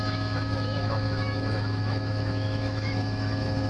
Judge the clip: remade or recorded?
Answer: remade